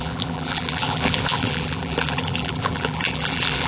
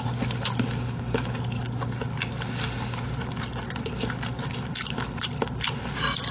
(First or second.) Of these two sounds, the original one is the second